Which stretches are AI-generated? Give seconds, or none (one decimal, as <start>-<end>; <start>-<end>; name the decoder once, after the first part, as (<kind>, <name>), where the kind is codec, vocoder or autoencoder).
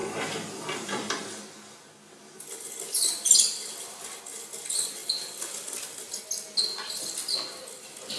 0.0-1.4 (vocoder, BigVGAN v2)